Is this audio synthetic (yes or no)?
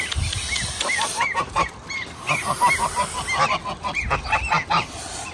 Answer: no